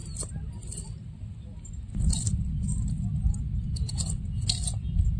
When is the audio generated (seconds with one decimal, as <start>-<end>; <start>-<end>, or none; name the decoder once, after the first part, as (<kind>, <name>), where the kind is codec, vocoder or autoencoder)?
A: none

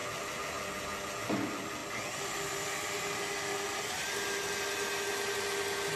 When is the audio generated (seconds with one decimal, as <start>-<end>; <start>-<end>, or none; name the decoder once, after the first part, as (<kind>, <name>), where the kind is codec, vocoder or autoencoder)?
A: none

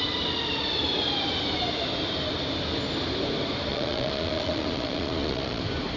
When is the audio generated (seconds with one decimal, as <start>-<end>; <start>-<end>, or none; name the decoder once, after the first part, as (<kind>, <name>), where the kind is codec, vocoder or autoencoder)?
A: 3.7-5.6 (vocoder, Vocos)